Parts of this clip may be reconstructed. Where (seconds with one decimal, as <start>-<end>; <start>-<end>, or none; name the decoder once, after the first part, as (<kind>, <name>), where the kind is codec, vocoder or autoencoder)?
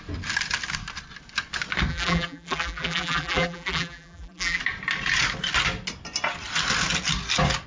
1.9-4.6 (vocoder, BigVGAN v2)